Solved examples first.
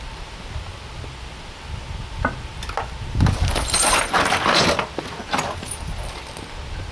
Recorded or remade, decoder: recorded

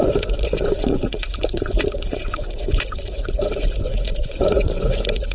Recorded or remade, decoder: remade, vocoder, Vocos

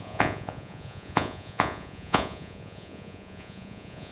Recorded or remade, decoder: remade, vocoder, Vocos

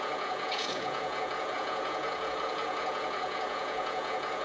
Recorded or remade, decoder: remade, vocoder, Vocos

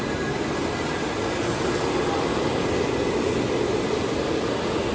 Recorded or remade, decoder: recorded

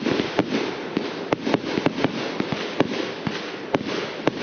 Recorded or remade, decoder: recorded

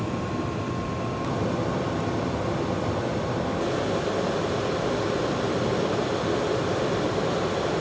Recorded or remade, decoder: recorded